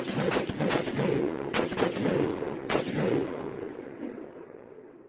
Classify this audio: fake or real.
fake